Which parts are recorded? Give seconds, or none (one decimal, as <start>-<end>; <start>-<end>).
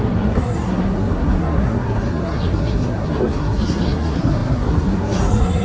none